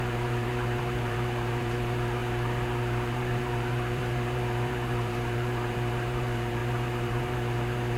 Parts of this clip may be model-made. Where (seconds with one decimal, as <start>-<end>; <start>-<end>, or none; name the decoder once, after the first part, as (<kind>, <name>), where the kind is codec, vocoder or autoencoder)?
0.0-8.0 (vocoder, BigVGAN v2)